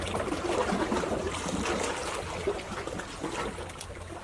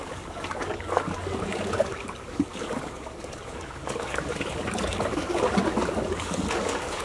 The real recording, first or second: first